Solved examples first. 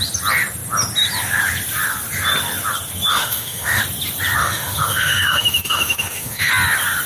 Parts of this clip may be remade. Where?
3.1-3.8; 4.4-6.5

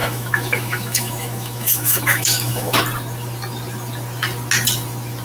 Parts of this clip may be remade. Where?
0.0-2.8

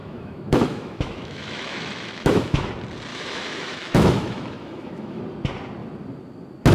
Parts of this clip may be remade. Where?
0.0-2.7; 3.1-5.2

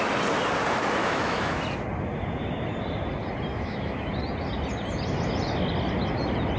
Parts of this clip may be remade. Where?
1.0-1.6; 3.5-4.1

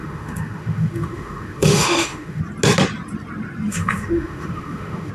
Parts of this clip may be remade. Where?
0.0-2.4; 3.7-5.1

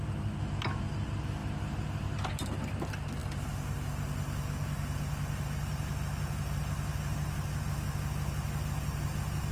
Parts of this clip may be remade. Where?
none